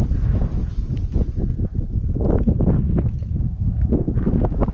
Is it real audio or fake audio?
real